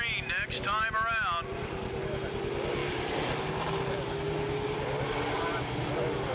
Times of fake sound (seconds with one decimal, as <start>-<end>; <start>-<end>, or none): none